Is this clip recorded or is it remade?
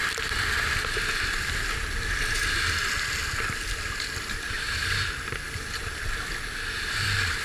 recorded